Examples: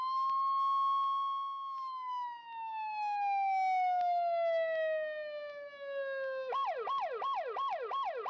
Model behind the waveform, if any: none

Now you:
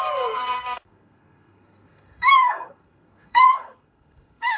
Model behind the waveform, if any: codec, SNAC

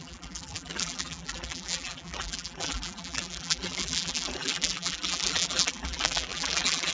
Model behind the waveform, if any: vocoder, BigVGAN v2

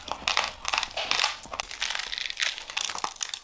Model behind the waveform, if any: none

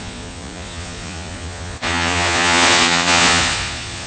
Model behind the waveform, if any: vocoder, Vocos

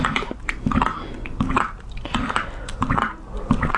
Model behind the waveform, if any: none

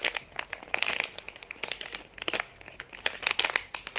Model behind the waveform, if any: none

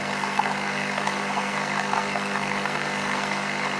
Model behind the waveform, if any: codec, SNAC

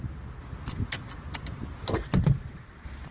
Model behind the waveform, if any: none